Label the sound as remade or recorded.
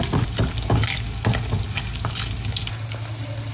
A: recorded